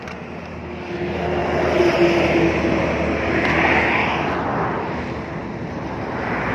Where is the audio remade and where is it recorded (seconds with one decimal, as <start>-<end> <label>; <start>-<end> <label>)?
0.0-6.5 recorded